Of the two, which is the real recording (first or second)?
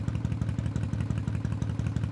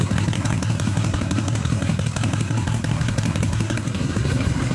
first